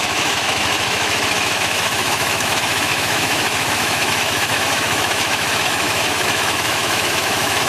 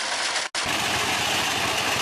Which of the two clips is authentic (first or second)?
second